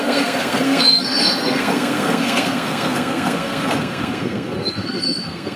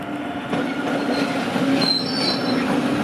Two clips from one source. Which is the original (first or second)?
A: second